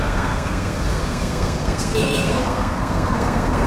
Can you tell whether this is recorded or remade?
remade